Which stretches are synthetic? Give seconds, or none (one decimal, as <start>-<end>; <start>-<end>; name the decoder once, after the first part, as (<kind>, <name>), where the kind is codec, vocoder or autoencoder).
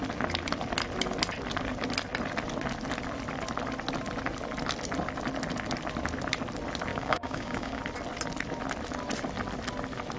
6.9-7.8 (codec, DAC)